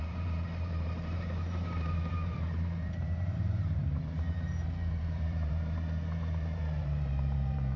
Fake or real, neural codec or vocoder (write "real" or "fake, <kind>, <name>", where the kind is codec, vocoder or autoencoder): fake, vocoder, BigVGAN v2